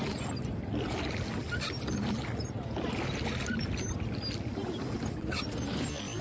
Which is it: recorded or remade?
recorded